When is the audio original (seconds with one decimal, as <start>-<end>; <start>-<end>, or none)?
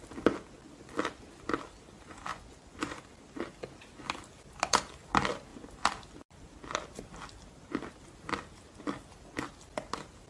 0.0-2.3; 3.0-10.3